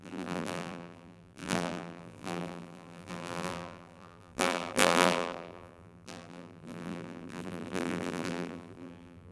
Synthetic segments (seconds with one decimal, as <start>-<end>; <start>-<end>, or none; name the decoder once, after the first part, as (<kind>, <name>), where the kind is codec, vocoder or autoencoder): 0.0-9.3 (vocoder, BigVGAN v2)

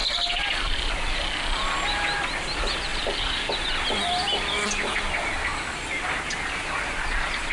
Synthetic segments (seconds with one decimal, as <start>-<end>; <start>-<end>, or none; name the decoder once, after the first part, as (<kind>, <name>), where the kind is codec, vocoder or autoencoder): 0.0-0.9 (vocoder, BigVGAN v2); 2.9-3.5

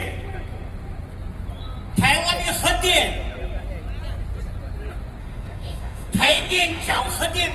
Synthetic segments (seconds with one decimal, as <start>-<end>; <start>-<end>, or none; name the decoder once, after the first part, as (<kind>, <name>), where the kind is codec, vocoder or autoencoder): 5.2-7.0 (autoencoder, DAC-VAE)